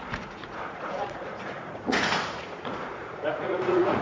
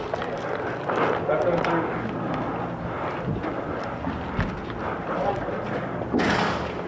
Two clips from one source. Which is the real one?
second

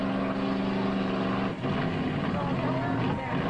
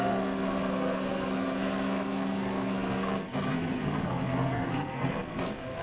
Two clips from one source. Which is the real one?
first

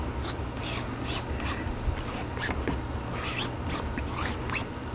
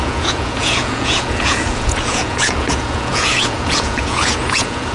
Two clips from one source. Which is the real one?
first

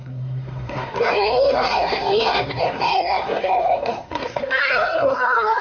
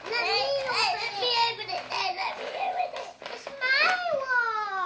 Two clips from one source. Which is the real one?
second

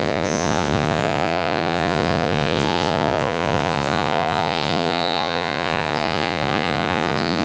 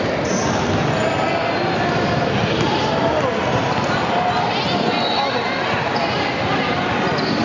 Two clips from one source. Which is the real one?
second